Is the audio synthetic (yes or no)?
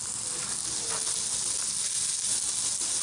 no